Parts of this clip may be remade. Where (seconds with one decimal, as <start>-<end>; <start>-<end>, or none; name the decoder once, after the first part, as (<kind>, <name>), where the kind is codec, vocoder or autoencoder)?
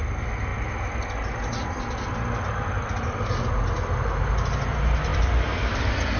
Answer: none